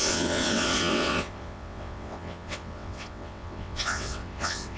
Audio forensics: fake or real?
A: fake